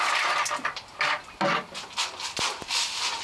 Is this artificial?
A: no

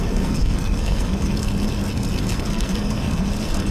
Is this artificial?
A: yes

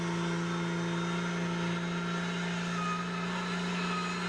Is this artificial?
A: no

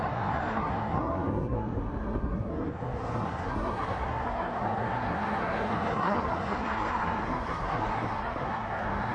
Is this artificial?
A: yes